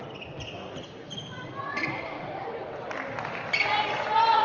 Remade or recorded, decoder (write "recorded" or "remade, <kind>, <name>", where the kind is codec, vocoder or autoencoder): recorded